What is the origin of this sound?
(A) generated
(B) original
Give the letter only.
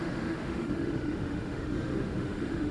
A